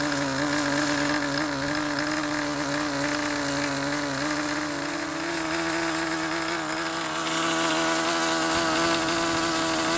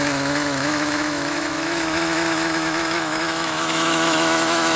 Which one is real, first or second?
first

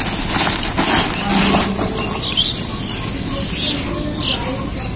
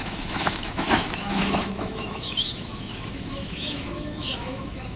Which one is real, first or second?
first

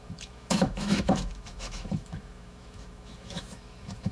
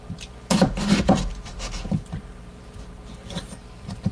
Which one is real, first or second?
second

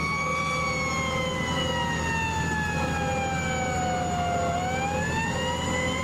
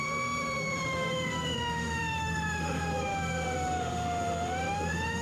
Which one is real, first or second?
first